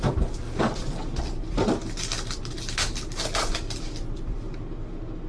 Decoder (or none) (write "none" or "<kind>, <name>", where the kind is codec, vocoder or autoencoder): none